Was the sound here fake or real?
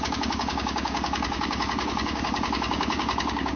fake